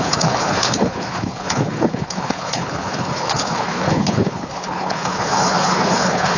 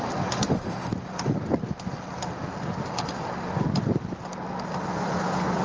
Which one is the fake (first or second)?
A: first